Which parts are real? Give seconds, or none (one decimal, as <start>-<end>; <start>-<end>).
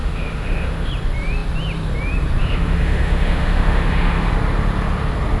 0.9-2.4; 4.3-5.4